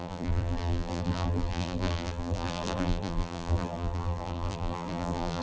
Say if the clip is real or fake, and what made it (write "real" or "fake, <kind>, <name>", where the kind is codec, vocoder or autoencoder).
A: fake, vocoder, BigVGAN v2